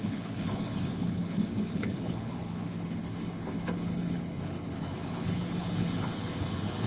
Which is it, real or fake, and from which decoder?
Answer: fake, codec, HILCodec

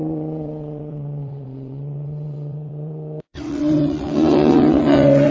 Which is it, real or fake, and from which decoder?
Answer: fake, vocoder, WaveNeXt